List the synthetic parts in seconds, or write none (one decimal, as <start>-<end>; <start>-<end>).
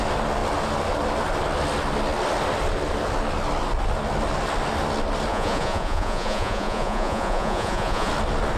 5.3-8.1